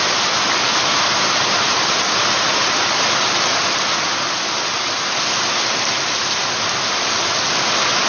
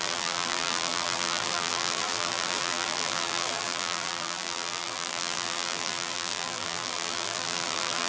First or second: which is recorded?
first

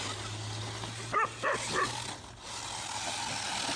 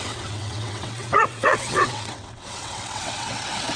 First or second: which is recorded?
first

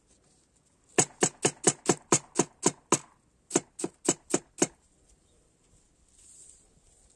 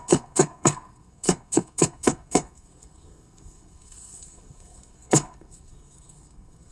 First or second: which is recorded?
first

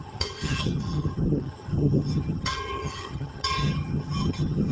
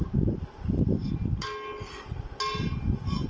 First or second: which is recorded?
second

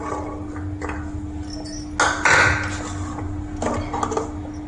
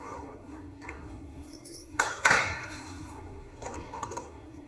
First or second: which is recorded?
first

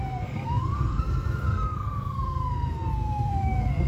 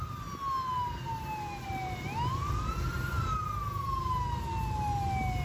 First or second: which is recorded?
second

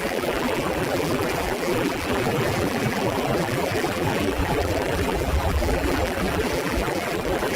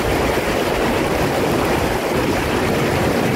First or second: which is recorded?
second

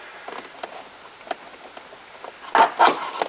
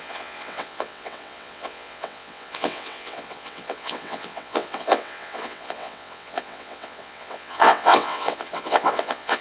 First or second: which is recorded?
first